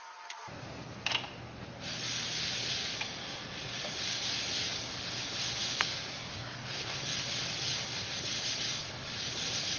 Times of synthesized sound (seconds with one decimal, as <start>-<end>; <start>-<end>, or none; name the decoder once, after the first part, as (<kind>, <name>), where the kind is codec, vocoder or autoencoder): 6.3-7.0 (codec, SNAC)